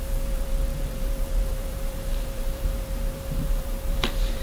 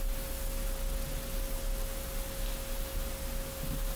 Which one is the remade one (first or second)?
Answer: first